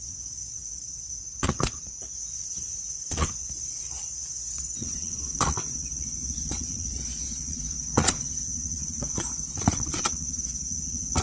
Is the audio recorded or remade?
remade